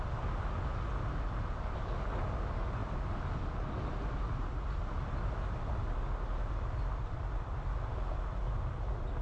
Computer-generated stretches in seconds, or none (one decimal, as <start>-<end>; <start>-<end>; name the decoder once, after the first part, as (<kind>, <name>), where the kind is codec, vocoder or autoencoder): none